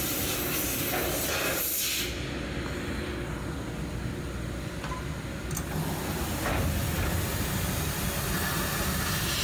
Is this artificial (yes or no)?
no